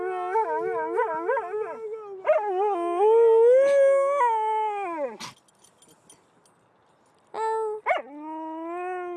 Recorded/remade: recorded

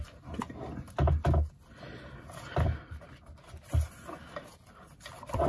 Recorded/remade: recorded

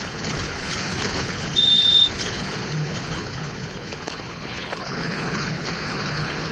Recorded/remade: remade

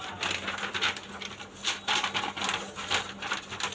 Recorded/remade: recorded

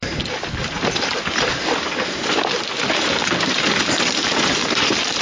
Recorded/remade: recorded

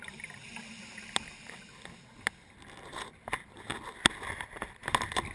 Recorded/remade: recorded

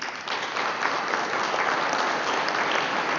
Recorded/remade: recorded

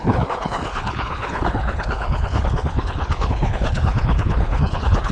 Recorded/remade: remade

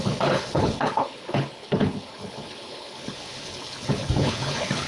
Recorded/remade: remade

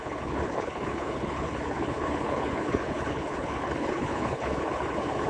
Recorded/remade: remade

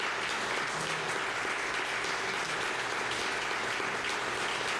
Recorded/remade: recorded